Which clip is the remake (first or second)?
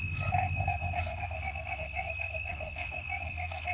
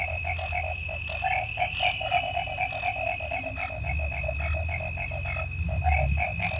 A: first